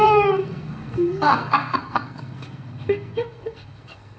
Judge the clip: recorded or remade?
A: remade